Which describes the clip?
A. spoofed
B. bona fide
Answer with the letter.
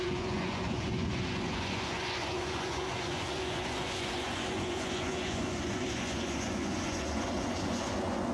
A